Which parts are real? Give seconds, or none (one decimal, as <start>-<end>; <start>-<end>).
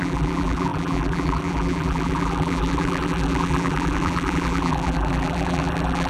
none